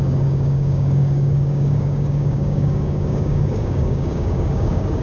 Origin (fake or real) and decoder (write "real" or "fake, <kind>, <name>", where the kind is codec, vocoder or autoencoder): fake, codec, DAC